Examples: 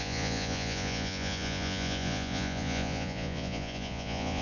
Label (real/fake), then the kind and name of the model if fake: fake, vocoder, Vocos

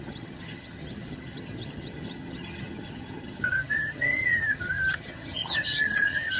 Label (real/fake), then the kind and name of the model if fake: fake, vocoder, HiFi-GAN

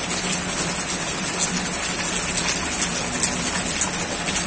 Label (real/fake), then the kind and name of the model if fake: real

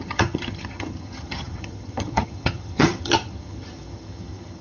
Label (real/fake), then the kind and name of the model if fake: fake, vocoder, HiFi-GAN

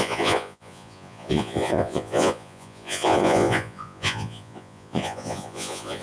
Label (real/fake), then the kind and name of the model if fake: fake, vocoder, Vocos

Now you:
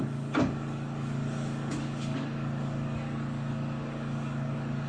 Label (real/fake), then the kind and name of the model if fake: fake, codec, DAC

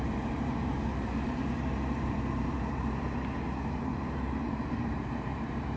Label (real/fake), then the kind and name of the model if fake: fake, vocoder, BigVGAN v2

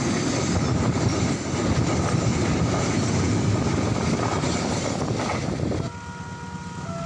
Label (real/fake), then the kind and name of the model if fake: real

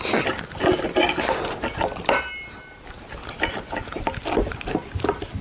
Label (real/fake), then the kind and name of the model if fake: real